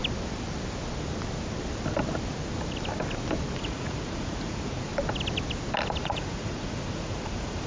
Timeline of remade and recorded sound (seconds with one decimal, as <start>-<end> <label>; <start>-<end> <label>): 0.0-3.6 recorded; 3.6-4.9 remade; 4.9-6.0 recorded; 6.0-7.7 remade